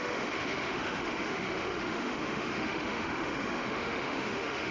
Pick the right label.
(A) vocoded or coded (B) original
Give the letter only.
A